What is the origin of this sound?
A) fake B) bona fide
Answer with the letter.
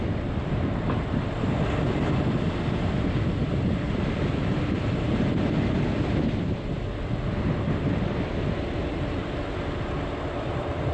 A